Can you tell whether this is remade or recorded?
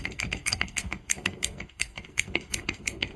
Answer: remade